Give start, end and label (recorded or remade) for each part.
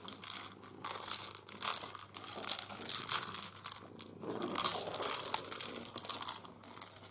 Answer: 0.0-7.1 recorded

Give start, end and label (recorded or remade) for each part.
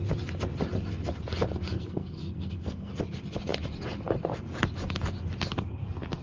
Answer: 0.0-1.7 recorded; 1.7-2.9 remade; 2.9-6.2 recorded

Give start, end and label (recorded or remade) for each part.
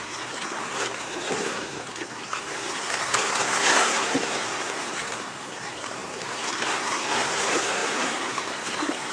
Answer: 0.0-9.1 remade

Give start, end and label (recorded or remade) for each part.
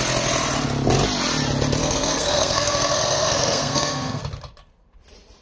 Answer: 0.0-1.8 recorded; 1.8-4.2 remade; 4.2-5.4 recorded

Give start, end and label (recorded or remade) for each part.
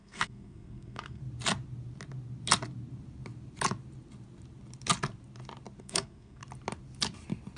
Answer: 0.0-1.2 remade; 1.2-5.8 recorded; 5.8-6.4 remade; 6.4-7.6 recorded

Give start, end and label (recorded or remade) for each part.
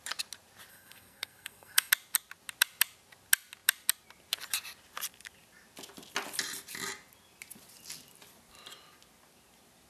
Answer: 0.0-0.7 recorded; 0.7-1.9 remade; 1.9-9.9 recorded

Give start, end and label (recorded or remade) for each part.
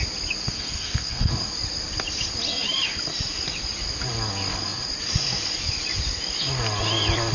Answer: 0.0-0.4 recorded; 0.4-1.3 remade; 1.3-7.3 recorded